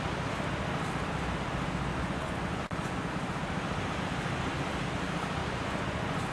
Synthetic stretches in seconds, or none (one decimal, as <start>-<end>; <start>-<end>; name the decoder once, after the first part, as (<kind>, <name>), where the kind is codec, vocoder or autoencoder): 1.9-3.1 (vocoder, Vocos); 5.4-6.3